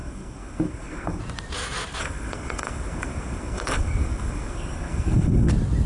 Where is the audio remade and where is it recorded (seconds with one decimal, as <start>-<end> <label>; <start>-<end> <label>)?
0.0-1.2 remade; 1.2-2.0 recorded; 2.0-5.5 remade; 5.5-5.9 recorded